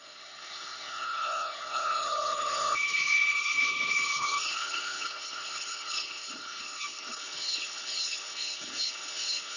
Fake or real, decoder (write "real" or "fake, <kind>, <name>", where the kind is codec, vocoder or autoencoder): fake, codec, HILCodec